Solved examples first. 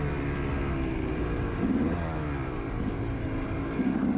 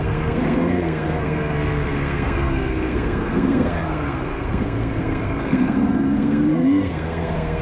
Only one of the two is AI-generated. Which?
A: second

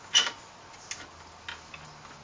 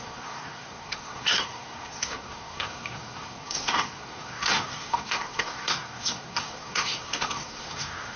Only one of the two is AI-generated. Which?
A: second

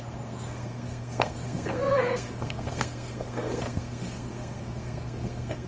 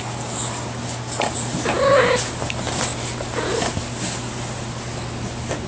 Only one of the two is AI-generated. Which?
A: first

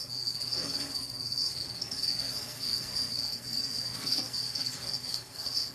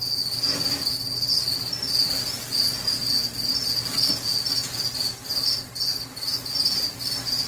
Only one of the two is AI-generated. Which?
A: first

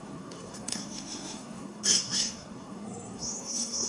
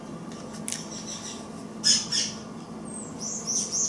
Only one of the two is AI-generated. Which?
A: first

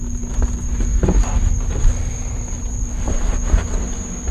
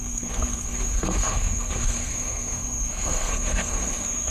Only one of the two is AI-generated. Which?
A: second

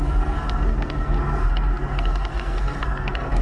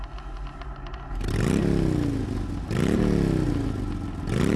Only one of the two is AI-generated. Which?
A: first